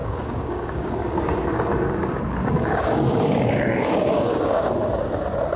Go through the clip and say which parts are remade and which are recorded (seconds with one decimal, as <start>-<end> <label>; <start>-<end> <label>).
0.0-0.9 remade; 0.9-1.5 recorded; 1.5-4.9 remade; 4.9-5.6 recorded